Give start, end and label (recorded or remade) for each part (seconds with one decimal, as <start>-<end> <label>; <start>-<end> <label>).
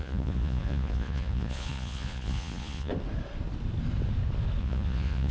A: 0.0-2.9 remade; 2.9-4.6 recorded; 4.6-5.3 remade